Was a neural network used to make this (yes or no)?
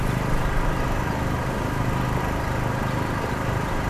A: no